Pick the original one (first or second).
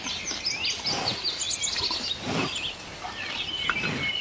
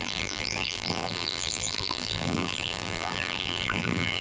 first